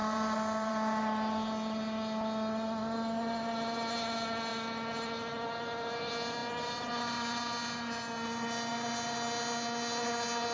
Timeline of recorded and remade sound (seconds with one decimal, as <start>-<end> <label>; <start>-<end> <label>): 0.0-0.7 remade; 0.7-10.5 recorded